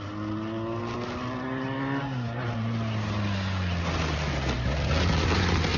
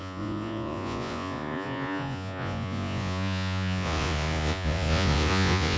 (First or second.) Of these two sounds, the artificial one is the second